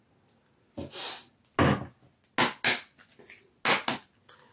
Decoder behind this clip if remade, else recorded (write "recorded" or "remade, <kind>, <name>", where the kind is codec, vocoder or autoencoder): recorded